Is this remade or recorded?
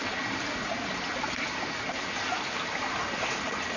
recorded